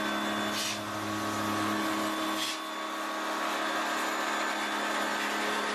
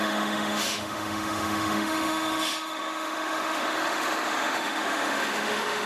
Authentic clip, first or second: first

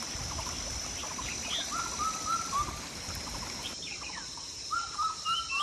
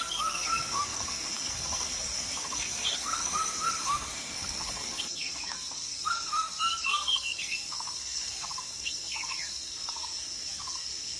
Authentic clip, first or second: first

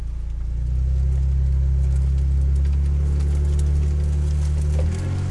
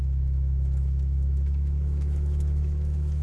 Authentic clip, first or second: first